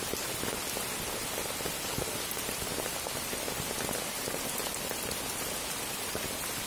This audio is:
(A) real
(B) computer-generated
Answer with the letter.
A